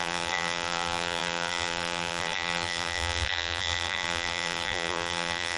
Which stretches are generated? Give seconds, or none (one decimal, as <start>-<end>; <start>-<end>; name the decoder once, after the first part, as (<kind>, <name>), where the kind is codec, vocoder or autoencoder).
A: 0.0-5.6 (vocoder, BigVGAN v2)